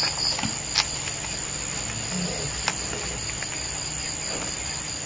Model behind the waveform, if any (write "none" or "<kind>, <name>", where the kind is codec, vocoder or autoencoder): none